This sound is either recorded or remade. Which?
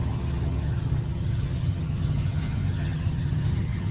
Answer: remade